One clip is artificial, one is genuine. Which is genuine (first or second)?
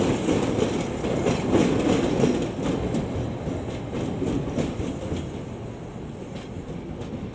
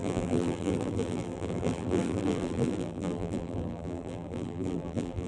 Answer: first